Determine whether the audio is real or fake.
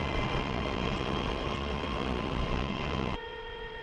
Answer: fake